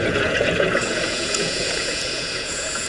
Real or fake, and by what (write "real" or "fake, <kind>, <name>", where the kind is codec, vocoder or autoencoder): fake, vocoder, Vocos